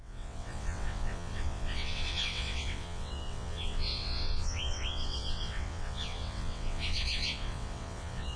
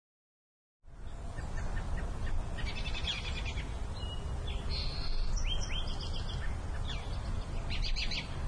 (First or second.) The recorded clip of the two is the second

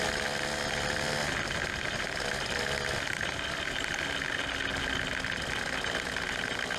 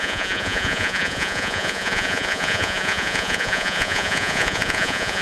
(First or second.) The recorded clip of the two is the first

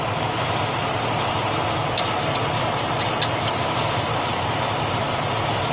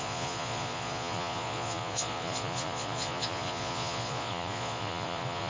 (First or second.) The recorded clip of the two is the first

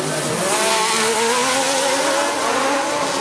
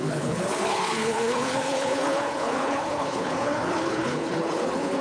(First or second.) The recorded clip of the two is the first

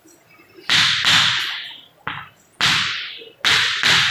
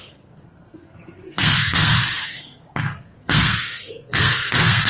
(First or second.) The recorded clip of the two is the first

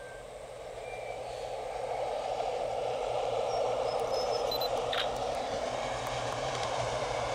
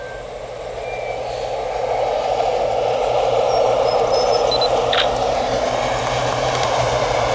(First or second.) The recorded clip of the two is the second